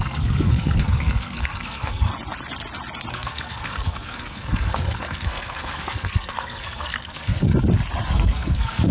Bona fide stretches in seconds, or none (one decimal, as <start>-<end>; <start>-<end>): 2.1-3.1; 7.5-8.1